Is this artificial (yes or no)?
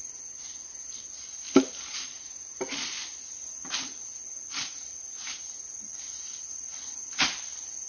no